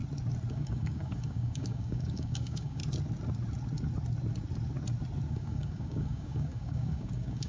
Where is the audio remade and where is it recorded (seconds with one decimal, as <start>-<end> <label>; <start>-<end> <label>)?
0.0-0.5 recorded; 0.5-2.8 remade; 2.8-5.3 recorded; 5.3-7.5 remade